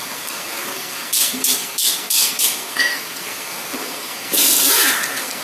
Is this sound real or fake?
fake